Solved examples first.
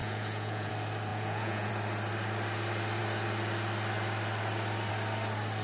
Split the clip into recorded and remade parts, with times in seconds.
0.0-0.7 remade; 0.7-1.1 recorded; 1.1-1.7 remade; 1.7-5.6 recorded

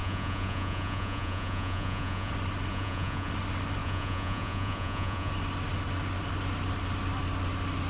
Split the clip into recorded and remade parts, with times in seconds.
0.0-2.3 remade; 2.3-2.7 recorded; 2.7-3.3 remade; 3.3-3.8 recorded; 3.8-5.3 remade; 5.3-7.9 recorded